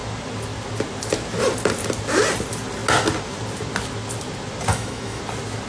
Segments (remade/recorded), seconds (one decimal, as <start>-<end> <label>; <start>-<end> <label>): 0.0-4.7 recorded; 4.7-5.2 remade; 5.2-5.7 recorded